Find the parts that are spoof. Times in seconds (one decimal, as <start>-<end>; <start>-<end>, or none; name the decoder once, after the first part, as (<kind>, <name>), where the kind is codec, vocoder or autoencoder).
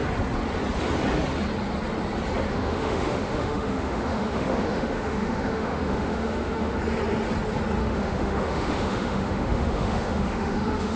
2.5-6.8 (autoencoder, DAC-VAE); 7.8-11.0